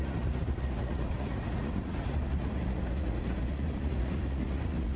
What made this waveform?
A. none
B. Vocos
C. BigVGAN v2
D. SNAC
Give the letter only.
B